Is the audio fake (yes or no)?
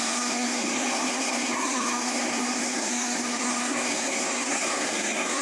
yes